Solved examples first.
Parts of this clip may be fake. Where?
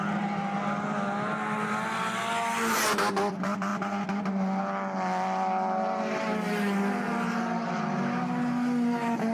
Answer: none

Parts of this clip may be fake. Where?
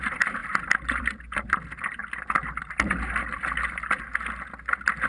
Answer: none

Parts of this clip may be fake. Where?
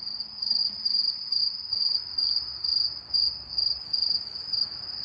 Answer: 0.0-2.5 (vocoder, BigVGAN v2); 3.5-5.0